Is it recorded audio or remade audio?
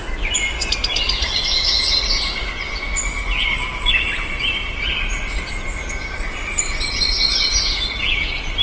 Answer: recorded